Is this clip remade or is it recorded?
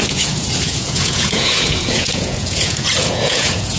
remade